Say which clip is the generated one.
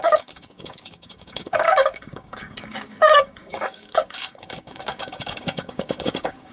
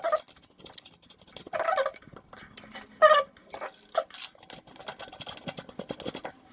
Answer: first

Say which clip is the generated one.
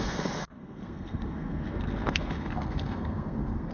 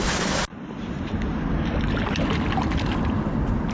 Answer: first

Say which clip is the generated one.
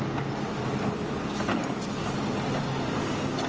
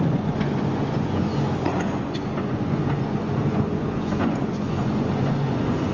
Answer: second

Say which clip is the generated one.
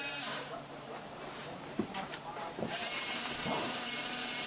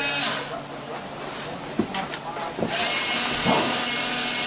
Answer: first